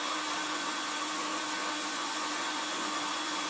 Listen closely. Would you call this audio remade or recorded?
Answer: remade